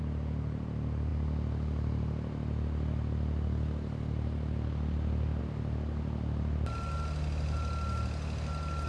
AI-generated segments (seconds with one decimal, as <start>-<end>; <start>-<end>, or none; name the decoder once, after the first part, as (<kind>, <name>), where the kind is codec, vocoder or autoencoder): none